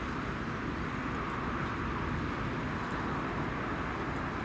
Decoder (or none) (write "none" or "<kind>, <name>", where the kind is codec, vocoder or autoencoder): none